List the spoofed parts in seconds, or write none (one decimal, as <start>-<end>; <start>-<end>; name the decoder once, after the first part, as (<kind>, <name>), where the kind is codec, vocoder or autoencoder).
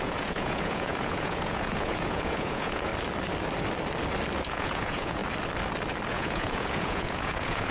0.0-2.9 (vocoder, Vocos); 4.5-5.2; 6.1-7.7